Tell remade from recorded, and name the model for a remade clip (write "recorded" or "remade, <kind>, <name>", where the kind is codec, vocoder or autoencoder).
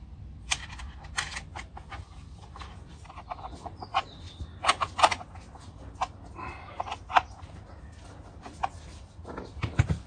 recorded